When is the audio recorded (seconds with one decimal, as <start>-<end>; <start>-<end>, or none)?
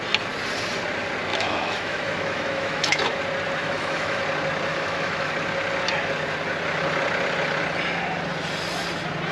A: 0.0-1.3; 3.2-3.6; 4.2-4.7; 5.3-9.3